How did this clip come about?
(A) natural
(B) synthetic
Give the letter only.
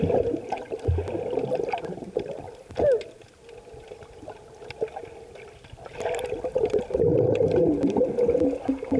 A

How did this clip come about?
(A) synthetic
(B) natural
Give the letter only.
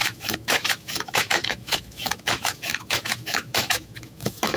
A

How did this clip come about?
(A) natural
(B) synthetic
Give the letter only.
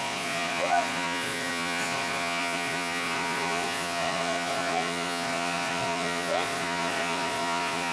B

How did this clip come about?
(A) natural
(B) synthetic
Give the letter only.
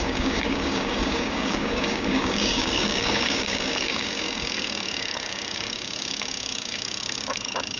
B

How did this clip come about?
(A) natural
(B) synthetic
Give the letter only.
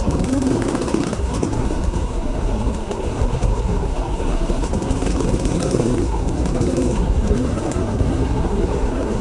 B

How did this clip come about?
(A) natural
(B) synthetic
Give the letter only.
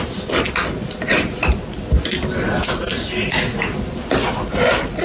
A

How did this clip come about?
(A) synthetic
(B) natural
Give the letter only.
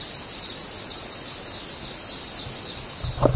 B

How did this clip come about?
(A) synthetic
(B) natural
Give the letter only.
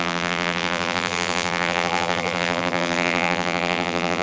A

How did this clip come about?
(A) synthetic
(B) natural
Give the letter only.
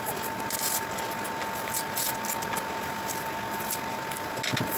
B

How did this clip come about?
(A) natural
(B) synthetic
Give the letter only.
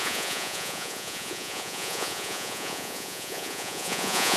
B